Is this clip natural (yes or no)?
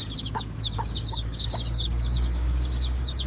no